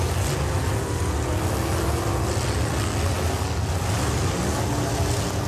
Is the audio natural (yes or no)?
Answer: yes